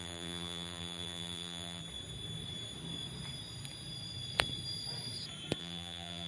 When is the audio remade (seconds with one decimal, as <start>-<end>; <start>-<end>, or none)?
0.0-1.8; 5.6-6.3